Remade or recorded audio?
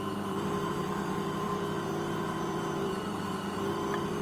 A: remade